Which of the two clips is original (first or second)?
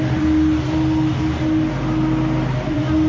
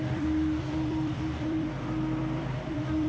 first